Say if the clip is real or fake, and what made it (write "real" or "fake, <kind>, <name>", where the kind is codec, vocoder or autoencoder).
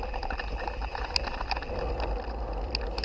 real